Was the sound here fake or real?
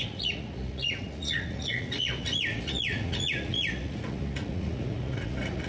fake